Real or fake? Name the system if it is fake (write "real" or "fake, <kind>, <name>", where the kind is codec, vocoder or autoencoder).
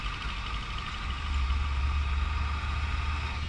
real